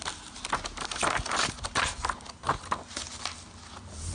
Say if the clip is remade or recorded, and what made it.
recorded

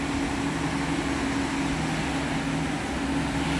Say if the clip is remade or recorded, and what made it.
recorded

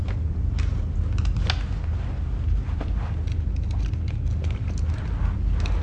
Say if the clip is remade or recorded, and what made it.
recorded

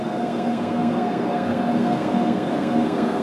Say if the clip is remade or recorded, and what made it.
remade, codec, SNAC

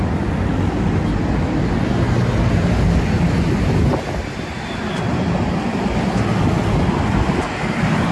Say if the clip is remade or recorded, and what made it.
recorded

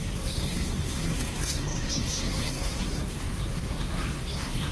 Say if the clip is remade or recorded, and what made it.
remade, codec, SNAC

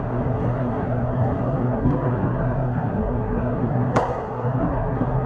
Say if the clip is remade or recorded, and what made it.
remade, codec, SNAC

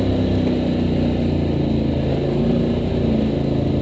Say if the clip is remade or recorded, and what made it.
recorded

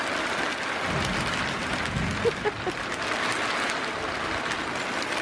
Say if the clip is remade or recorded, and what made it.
recorded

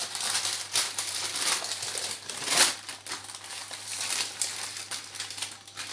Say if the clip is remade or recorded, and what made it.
recorded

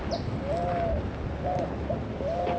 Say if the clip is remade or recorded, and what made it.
recorded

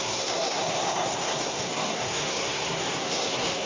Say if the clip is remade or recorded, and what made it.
remade, codec, SNAC